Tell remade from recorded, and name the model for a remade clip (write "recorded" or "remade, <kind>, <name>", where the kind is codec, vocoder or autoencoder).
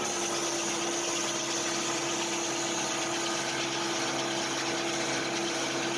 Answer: recorded